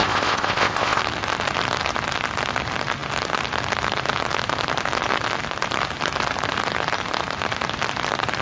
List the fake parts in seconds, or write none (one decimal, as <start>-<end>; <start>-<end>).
0.0-1.0